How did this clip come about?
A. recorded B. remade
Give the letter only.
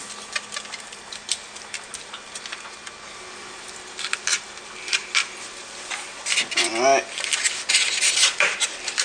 A